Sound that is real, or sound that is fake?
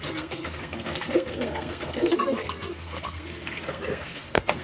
fake